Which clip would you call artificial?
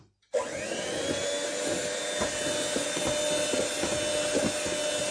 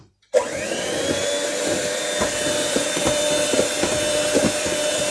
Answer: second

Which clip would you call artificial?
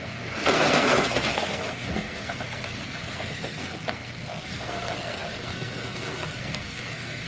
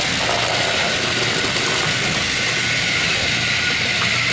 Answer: first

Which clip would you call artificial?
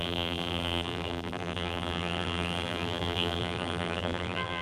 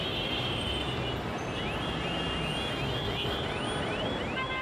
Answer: first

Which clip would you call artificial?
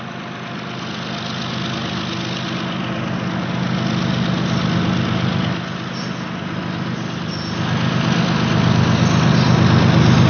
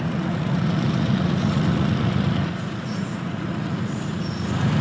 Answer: second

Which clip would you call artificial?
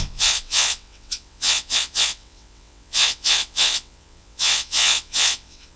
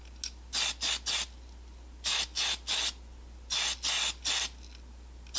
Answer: first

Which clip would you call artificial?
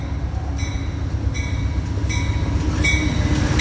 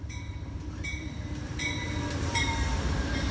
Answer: second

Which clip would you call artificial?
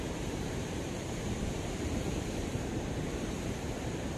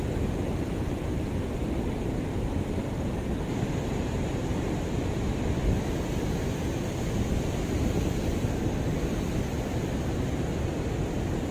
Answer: first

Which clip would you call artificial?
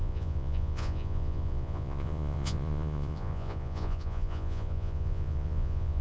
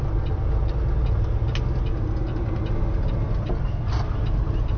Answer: first